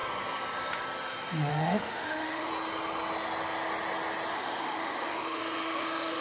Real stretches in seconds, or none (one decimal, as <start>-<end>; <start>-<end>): 0.0-1.5; 2.5-4.3